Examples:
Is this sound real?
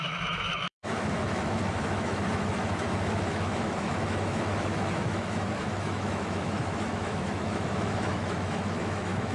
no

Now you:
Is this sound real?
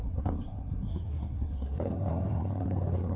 no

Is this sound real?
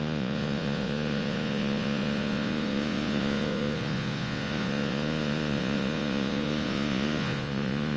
no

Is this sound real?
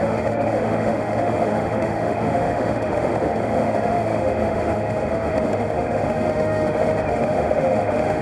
no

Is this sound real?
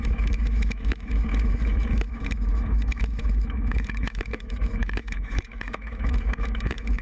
no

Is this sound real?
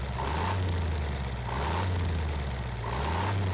yes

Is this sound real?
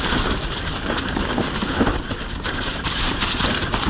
no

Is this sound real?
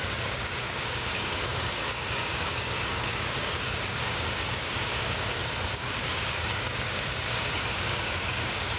no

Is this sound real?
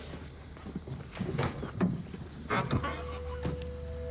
yes